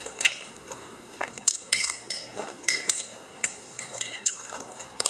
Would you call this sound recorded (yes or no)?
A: no